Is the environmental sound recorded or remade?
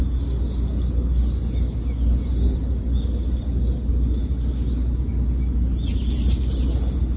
recorded